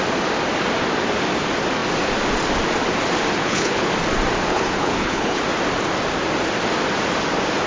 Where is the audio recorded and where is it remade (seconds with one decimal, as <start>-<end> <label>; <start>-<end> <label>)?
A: 0.0-3.4 recorded; 3.4-3.9 remade; 3.9-4.5 recorded; 4.5-5.4 remade; 5.4-7.7 recorded